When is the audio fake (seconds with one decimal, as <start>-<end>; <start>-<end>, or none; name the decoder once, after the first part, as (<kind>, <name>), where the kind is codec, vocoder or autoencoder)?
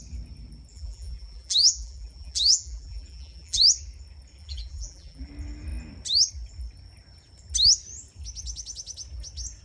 0.7-3.6 (vocoder, BigVGAN v2); 4.4-5.3